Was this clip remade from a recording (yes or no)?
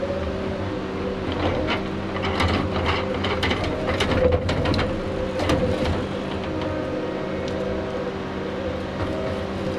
no